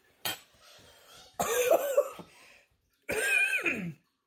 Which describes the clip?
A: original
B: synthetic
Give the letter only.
B